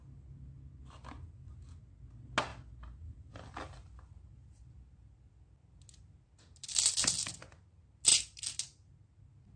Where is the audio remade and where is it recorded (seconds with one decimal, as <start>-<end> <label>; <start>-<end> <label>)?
0.0-2.5 recorded; 2.5-4.7 remade; 4.7-9.6 recorded